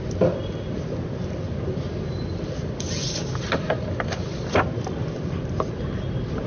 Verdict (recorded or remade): recorded